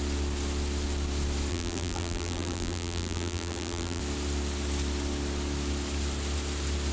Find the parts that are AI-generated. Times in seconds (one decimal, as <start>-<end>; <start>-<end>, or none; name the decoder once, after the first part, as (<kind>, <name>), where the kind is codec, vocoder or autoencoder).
1.5-4.0 (vocoder, BigVGAN v2)